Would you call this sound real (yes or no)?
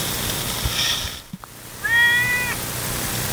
yes